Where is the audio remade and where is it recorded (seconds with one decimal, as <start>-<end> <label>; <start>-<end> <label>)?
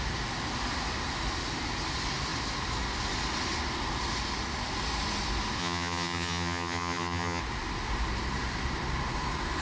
0.0-5.6 recorded; 5.6-7.4 remade; 7.4-9.6 recorded